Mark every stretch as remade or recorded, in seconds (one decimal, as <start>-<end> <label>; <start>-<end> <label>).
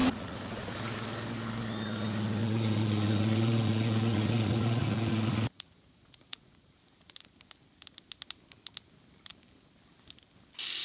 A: 0.0-0.8 remade; 0.8-2.4 recorded; 2.4-6.8 remade; 6.8-10.8 recorded